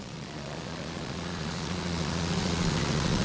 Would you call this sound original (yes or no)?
no